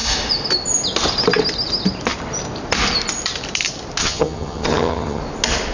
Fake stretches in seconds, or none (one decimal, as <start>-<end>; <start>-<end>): 4.0-5.2